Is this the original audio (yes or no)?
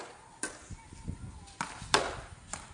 yes